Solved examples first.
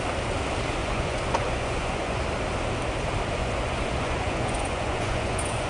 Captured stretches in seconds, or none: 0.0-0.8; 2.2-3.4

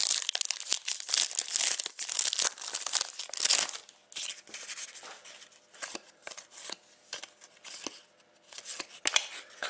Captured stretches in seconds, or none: 0.0-9.7